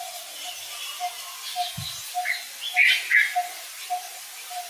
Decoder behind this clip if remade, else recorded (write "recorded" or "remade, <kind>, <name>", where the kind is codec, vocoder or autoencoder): recorded